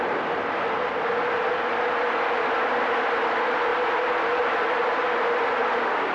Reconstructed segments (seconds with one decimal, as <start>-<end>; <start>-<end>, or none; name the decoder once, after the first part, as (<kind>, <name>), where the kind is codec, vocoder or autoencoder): 3.7-5.5 (vocoder, BigVGAN v2)